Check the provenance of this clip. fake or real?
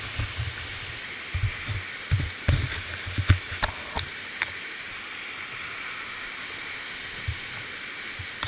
real